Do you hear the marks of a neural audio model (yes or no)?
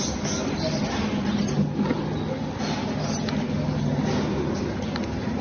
no